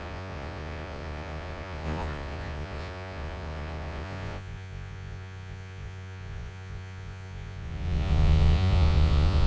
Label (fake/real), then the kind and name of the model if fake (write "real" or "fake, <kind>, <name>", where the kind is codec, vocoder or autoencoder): fake, vocoder, Vocos